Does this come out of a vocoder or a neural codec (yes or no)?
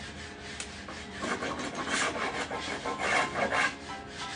no